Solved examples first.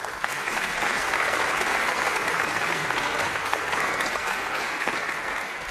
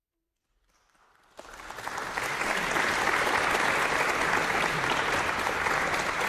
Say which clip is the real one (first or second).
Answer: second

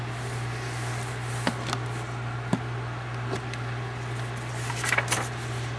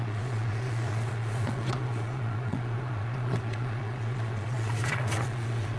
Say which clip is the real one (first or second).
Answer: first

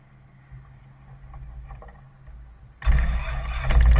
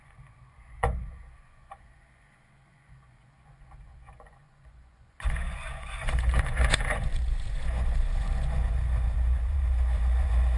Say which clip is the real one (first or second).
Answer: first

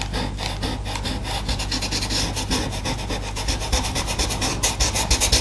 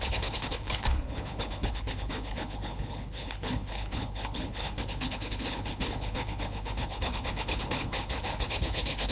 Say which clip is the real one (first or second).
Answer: first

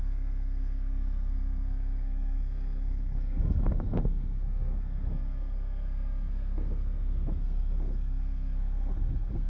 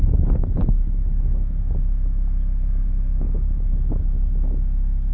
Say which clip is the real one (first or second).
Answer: second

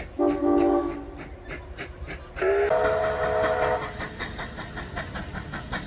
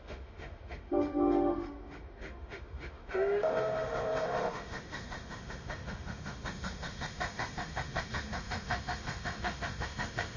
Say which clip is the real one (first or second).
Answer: first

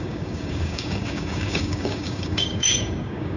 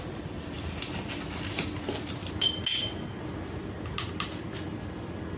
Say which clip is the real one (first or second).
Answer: second